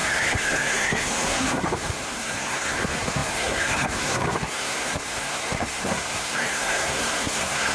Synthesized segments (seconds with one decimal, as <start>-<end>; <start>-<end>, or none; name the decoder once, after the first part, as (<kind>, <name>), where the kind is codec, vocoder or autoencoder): 0.0-7.7 (codec, SNAC)